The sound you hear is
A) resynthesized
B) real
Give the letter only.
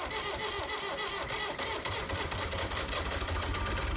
B